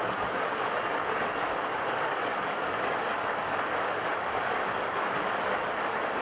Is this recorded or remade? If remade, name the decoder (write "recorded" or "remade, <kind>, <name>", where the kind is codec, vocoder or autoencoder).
remade, codec, DAC